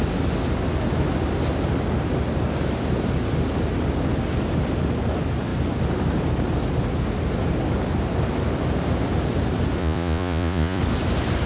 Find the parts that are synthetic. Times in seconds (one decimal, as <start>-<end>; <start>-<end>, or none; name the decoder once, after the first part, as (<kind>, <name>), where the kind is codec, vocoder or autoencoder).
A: 9.8-10.8 (vocoder, Vocos)